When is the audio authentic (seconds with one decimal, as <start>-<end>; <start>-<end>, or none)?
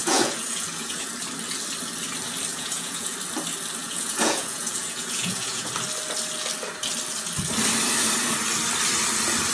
1.1-2.5; 3.1-3.8; 5.7-9.5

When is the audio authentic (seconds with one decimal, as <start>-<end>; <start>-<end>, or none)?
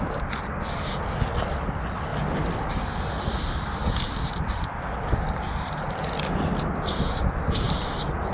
0.0-8.3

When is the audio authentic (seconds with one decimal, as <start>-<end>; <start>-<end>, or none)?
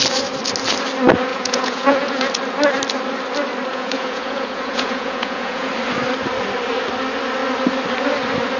0.0-1.3; 2.3-3.7; 5.7-8.6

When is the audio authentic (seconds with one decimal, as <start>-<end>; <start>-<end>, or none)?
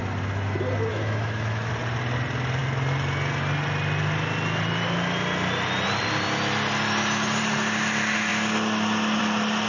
0.0-0.9; 1.7-9.7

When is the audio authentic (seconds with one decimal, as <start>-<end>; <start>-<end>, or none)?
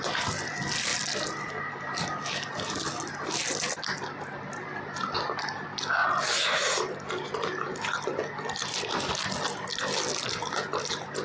0.0-11.2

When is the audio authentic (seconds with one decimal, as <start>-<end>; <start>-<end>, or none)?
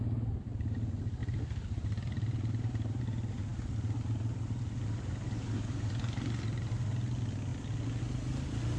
0.0-1.2; 3.0-8.8